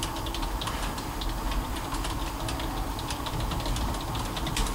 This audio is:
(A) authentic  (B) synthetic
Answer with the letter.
A